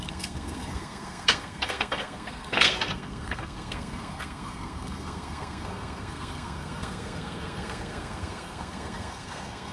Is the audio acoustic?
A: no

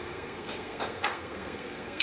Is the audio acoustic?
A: no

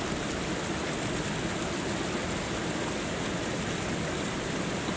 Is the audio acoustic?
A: yes